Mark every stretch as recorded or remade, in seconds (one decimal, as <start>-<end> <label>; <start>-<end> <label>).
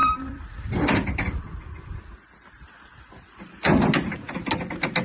0.0-3.0 remade; 3.0-5.0 recorded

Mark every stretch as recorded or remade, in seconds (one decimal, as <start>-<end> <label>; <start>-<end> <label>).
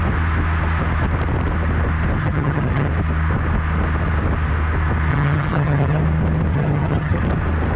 0.0-2.2 recorded; 2.2-2.9 remade; 2.9-5.1 recorded; 5.1-6.0 remade; 6.0-6.5 recorded; 6.5-7.2 remade; 7.2-7.8 recorded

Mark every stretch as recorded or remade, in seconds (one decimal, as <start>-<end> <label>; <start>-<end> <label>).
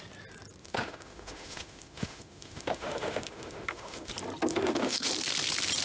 0.0-0.6 recorded; 0.6-4.1 remade; 4.1-4.5 recorded; 4.5-5.1 remade; 5.1-5.8 recorded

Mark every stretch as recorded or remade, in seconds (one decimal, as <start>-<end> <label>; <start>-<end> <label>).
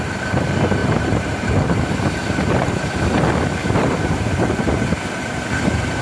0.0-0.8 recorded; 0.8-1.8 remade; 1.8-2.2 recorded; 2.2-2.7 remade; 2.7-3.6 recorded; 3.6-4.7 remade; 4.7-6.0 recorded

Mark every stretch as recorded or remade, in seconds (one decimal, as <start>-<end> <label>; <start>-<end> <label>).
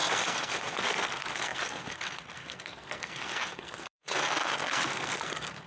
0.0-5.7 remade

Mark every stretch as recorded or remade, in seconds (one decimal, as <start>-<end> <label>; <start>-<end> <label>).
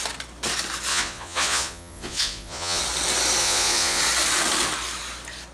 0.0-0.9 recorded; 0.9-2.8 remade; 2.8-3.4 recorded; 3.4-4.0 remade; 4.0-5.5 recorded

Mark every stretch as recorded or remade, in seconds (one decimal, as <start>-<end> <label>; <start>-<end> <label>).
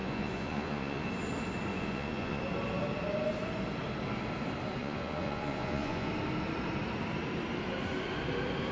0.0-1.1 remade; 1.1-1.7 recorded; 1.7-2.4 remade; 2.4-4.8 recorded; 4.8-6.1 remade; 6.1-8.7 recorded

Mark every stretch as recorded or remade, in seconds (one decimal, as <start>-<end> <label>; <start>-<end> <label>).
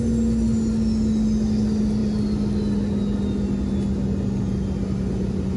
0.0-5.6 recorded